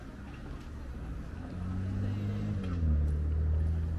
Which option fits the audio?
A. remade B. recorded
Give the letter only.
B